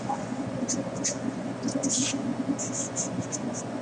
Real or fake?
fake